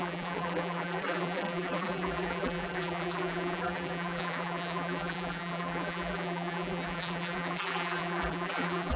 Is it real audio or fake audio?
fake